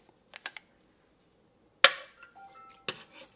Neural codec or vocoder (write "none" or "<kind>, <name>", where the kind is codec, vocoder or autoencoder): none